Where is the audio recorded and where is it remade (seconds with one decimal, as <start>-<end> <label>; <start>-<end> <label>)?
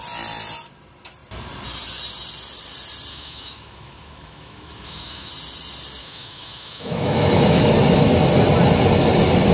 0.0-3.1 recorded; 3.1-5.3 remade; 5.3-6.0 recorded; 6.0-7.7 remade; 7.7-9.5 recorded